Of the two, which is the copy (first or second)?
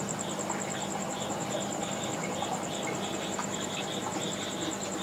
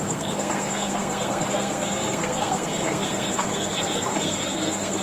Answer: second